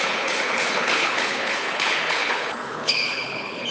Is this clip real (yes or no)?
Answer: no